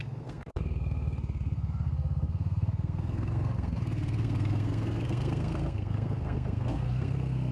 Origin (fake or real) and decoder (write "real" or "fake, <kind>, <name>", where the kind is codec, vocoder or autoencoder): fake, codec, SNAC